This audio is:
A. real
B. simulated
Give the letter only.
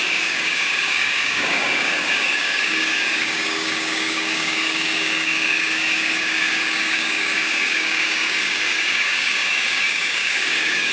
B